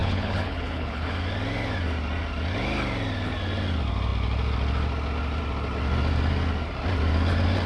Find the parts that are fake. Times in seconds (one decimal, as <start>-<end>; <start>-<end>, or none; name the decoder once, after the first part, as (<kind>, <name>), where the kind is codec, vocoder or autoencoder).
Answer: 0.0-1.1 (codec, HILCodec)

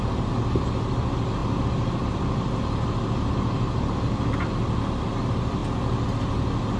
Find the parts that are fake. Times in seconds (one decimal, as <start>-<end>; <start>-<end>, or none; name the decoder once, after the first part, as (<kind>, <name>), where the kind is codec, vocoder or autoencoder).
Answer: none

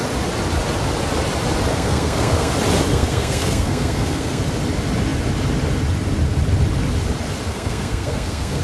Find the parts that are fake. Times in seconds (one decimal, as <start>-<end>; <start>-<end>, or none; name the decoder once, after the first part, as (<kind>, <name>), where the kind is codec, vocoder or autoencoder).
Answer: 1.7-2.5 (codec, SNAC); 2.9-4.4; 7.5-8.6

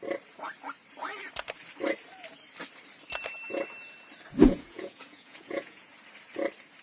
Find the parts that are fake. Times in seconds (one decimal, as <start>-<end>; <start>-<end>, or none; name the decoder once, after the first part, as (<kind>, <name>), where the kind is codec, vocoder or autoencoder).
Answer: 4.4-5.9 (vocoder, Vocos)

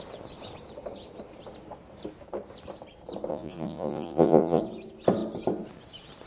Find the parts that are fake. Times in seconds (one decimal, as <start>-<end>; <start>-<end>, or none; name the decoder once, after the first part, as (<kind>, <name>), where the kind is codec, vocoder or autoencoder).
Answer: 3.3-4.6 (vocoder, Vocos)

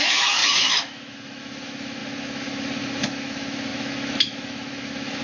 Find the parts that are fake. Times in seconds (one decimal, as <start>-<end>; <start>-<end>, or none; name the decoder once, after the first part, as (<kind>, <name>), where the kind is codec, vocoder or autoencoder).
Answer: 0.0-5.2 (autoencoder, DAC-VAE)